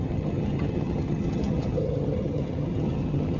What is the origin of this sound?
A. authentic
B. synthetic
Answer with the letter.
B